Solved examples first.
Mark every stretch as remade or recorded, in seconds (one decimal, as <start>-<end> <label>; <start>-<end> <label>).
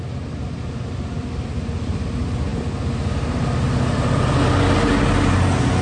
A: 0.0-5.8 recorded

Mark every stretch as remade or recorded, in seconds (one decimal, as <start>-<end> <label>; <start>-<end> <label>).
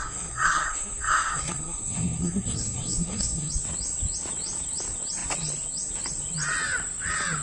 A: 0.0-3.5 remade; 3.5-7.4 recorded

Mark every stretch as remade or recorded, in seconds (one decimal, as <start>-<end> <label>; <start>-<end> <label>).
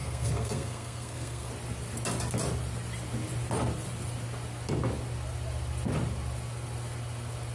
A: 0.0-1.5 remade; 1.5-7.5 recorded